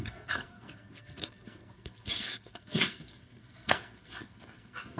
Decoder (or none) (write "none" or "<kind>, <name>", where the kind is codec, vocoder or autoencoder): codec, SNAC